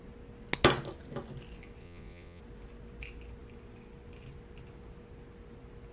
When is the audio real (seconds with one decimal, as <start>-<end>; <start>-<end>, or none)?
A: 0.0-1.8; 2.4-5.9